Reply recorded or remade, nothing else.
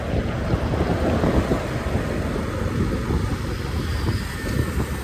recorded